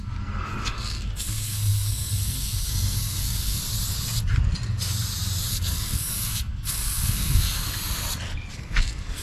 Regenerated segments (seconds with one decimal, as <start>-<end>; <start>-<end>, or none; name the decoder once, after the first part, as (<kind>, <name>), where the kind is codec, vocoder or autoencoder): 0.0-3.6 (codec, SNAC); 5.5-7.6; 8.5-9.2